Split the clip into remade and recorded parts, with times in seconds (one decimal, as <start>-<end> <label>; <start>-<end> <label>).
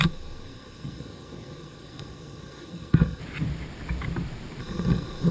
0.0-3.2 remade; 3.2-4.6 recorded; 4.6-5.3 remade